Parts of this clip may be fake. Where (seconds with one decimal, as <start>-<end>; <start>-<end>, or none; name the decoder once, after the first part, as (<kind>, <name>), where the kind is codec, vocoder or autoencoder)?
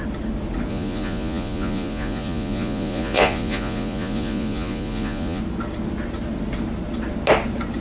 0.7-5.4 (vocoder, Vocos)